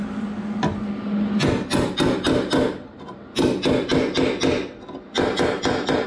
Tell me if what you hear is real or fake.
real